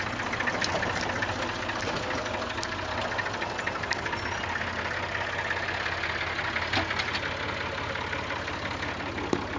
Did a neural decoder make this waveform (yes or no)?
no